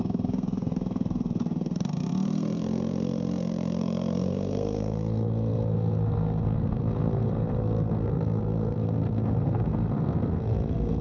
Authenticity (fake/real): fake